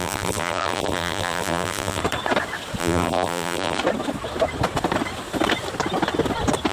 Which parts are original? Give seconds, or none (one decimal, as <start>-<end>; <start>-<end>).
2.0-2.8; 3.8-6.7